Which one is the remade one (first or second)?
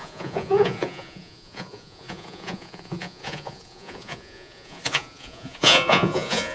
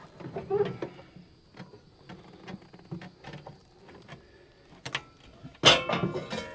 first